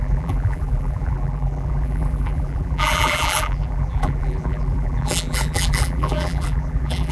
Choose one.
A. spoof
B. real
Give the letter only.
A